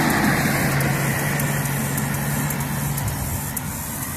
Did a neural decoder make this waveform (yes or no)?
no